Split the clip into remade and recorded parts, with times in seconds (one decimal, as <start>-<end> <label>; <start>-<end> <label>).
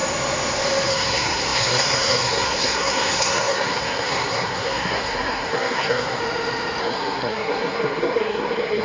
0.0-0.9 recorded; 0.9-6.2 remade; 6.2-6.8 recorded; 6.8-8.8 remade